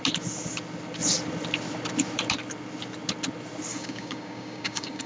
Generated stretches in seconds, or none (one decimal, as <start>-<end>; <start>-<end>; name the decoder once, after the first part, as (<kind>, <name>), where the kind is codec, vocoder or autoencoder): 3.7-5.1 (codec, DAC)